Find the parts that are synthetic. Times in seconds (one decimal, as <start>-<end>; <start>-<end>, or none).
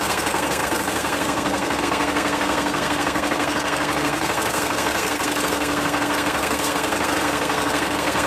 0.0-8.3